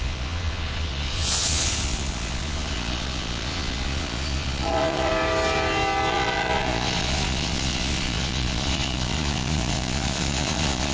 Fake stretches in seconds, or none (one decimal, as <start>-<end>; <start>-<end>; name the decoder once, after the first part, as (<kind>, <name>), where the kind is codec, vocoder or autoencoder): 0.0-5.1 (vocoder, Vocos); 6.1-10.9

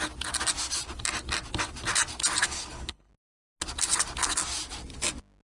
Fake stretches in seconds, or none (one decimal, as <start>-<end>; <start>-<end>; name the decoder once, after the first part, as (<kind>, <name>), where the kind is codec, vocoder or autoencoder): 2.4-3.1 (codec, HILCodec)

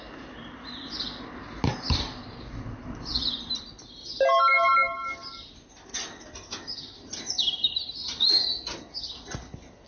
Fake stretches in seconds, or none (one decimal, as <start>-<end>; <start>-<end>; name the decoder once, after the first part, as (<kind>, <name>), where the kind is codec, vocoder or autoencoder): none

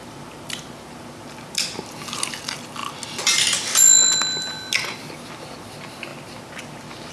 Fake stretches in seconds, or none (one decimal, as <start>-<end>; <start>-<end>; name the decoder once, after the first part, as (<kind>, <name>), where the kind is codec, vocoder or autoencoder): none

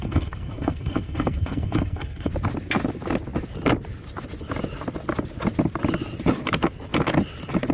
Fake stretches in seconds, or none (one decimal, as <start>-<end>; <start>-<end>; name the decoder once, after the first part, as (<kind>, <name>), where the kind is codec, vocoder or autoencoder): 0.0-2.3 (codec, SNAC)

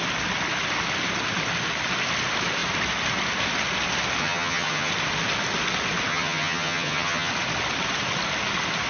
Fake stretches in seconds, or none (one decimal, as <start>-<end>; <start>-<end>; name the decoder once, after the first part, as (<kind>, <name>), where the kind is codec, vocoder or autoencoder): 4.2-4.9 (vocoder, HiFi-GAN); 6.1-7.3

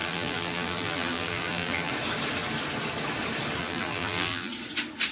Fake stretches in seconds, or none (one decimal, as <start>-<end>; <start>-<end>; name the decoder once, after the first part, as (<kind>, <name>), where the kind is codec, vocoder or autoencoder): 0.0-1.9 (vocoder, BigVGAN v2); 3.6-4.5